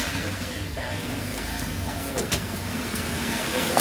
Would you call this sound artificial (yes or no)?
yes